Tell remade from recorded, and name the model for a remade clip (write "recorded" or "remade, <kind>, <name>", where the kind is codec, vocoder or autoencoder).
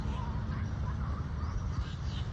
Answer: recorded